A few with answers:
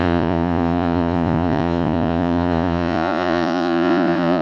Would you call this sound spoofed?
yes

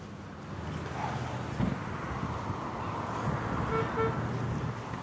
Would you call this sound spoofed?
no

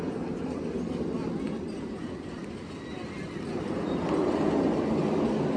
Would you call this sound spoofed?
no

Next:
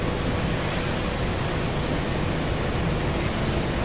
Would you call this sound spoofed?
no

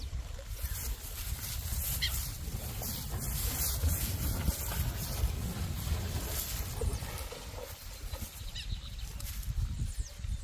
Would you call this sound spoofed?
no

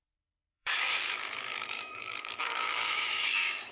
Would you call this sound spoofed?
yes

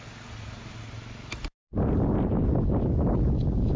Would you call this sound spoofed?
no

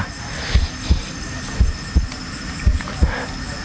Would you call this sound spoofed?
no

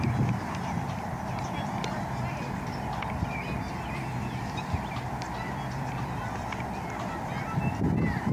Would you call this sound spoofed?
yes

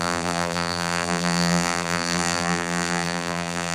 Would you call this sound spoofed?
yes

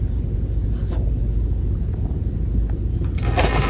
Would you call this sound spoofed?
no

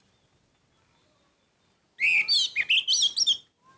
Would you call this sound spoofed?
no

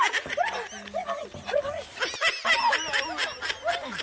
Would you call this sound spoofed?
no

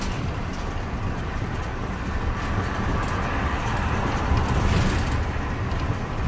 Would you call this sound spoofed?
no